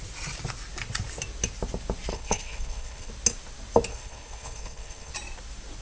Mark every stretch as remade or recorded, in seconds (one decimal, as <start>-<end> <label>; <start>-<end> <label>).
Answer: 0.0-2.1 recorded; 2.1-3.1 remade; 3.1-3.9 recorded; 3.9-5.1 remade; 5.1-5.8 recorded